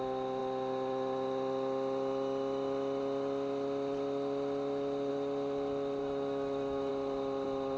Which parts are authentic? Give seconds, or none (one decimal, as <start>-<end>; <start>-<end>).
0.0-6.0; 6.9-7.8